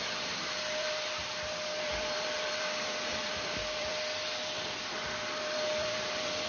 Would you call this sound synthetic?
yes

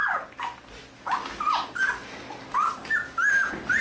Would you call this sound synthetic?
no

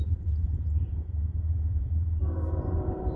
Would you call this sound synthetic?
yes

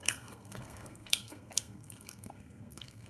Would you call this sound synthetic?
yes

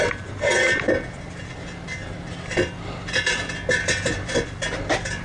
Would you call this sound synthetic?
no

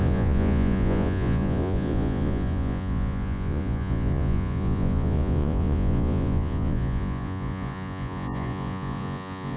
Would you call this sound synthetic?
yes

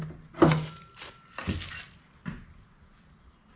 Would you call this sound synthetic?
no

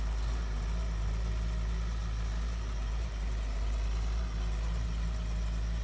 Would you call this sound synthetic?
no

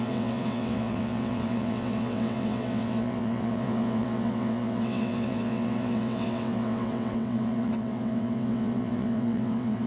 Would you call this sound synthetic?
yes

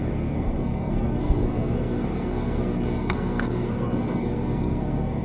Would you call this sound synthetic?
yes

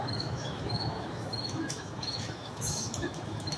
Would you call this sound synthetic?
yes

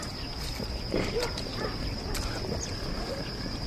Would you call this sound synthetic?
no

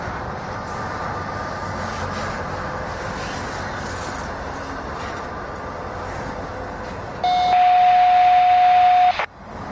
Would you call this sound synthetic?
no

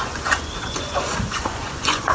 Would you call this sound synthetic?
yes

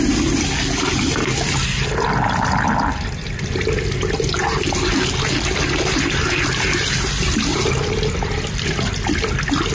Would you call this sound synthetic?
no